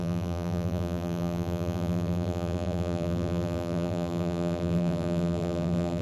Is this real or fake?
fake